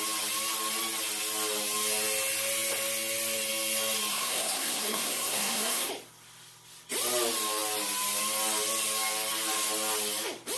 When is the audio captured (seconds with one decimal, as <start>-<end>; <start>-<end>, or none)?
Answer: 0.0-4.1; 5.9-10.6